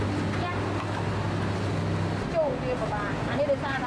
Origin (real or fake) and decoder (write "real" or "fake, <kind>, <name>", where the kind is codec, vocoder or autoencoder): real